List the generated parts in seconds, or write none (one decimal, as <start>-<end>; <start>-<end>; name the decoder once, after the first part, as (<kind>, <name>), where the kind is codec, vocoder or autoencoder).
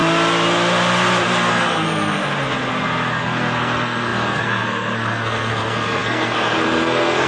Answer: 1.5-2.2 (codec, SNAC); 3.1-7.3